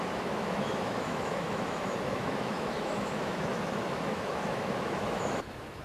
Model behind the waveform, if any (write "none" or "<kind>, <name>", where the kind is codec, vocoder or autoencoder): autoencoder, DAC-VAE